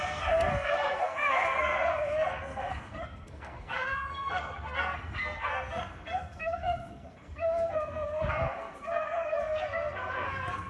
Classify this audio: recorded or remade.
remade